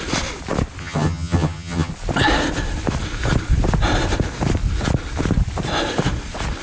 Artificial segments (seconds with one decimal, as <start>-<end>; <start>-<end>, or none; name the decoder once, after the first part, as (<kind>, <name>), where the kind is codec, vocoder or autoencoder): 0.8-1.9 (vocoder, HiFi-GAN)